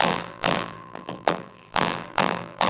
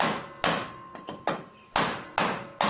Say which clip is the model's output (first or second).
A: first